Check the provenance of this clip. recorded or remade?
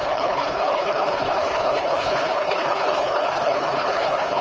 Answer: remade